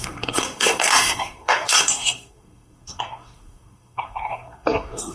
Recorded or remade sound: remade